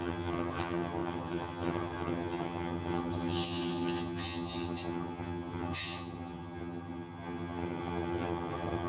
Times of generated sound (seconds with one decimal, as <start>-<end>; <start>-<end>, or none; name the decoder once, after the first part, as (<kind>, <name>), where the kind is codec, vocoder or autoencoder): 0.0-8.9 (vocoder, HiFi-GAN)